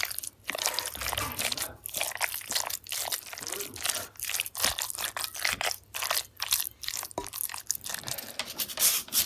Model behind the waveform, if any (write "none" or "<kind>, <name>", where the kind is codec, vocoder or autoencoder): none